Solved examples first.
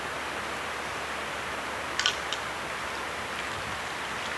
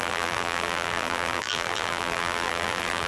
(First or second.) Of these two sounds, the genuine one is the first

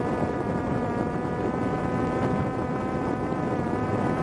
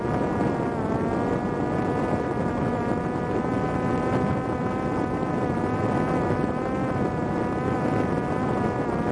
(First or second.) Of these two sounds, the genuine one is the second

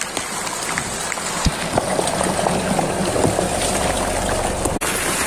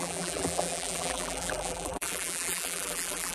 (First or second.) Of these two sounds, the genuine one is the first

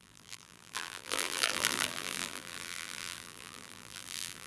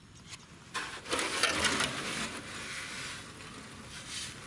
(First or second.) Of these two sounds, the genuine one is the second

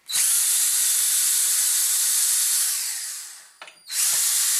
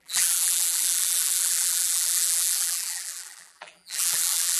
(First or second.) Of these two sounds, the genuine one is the first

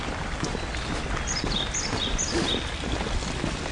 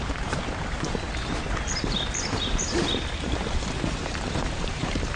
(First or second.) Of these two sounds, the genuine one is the first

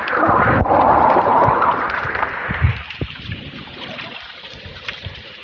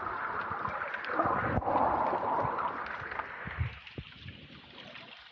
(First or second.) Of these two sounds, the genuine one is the second